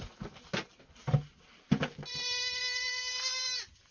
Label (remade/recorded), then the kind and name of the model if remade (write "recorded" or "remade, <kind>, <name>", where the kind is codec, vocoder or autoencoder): recorded